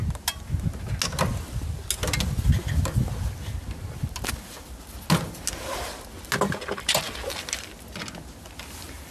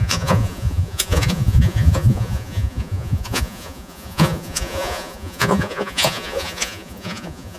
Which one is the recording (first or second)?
first